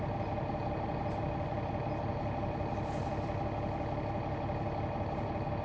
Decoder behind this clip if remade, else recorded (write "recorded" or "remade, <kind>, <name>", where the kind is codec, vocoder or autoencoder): recorded